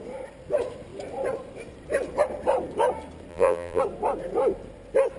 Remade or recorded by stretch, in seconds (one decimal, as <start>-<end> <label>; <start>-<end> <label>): 0.0-3.3 recorded; 3.3-3.8 remade; 3.8-5.2 recorded